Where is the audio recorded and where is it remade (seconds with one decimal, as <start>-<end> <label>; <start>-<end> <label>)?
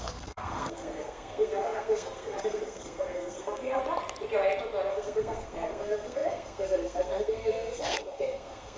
0.0-3.8 remade; 3.8-4.9 recorded; 4.9-8.8 remade